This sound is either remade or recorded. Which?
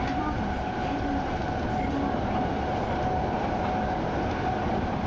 recorded